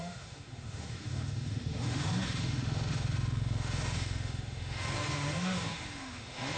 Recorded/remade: remade